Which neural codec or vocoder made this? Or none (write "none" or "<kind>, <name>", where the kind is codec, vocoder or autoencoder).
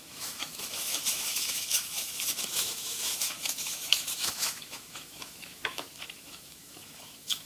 autoencoder, DAC-VAE